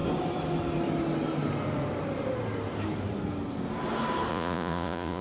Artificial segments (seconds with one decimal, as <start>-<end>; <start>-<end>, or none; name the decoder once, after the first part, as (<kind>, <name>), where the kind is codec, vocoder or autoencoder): 4.3-5.2 (vocoder, Vocos)